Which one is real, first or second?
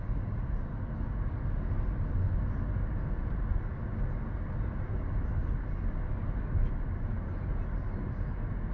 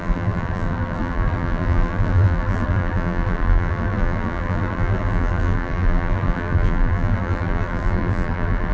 first